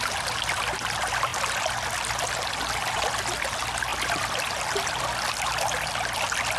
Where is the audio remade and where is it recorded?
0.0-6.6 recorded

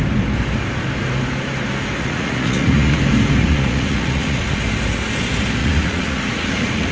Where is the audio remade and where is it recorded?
0.0-2.0 recorded; 2.0-3.0 remade; 3.0-3.4 recorded; 3.4-4.6 remade; 4.6-5.6 recorded; 5.6-6.9 remade

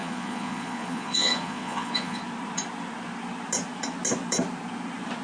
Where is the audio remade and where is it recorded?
0.0-2.2 remade; 2.2-5.2 recorded

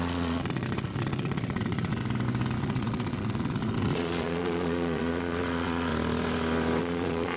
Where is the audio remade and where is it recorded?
0.0-2.0 remade; 2.0-2.6 recorded; 2.6-5.9 remade; 5.9-6.8 recorded; 6.8-7.4 remade

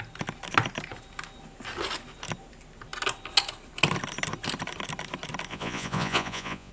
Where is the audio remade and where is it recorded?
0.0-5.5 recorded; 5.5-6.7 remade

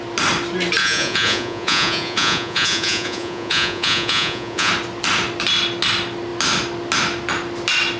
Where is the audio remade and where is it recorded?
0.0-0.8 recorded; 0.8-4.7 remade; 4.7-8.0 recorded

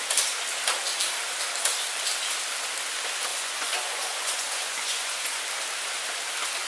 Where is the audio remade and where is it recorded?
0.0-3.3 recorded; 3.3-5.4 remade; 5.4-6.7 recorded